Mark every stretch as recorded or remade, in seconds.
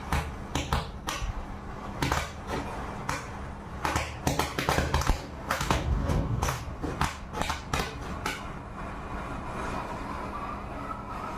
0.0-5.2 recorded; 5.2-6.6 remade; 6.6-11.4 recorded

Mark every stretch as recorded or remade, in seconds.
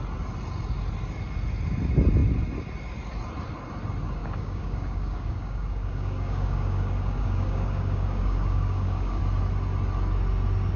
0.0-4.2 recorded; 4.2-9.2 remade; 9.2-10.8 recorded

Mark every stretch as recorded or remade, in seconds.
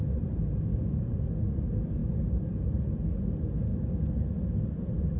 0.0-0.7 recorded; 0.7-1.3 remade; 1.3-3.7 recorded; 3.7-4.2 remade; 4.2-5.2 recorded